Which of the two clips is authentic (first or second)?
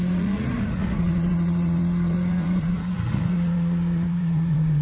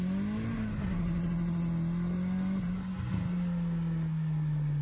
second